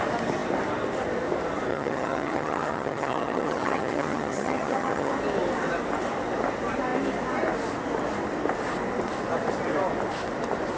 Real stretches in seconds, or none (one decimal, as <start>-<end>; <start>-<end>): 0.0-1.7; 5.1-10.8